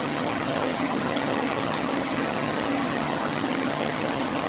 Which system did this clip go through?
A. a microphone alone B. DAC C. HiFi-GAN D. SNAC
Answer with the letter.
C